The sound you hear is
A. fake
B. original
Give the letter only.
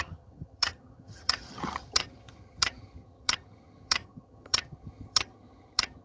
A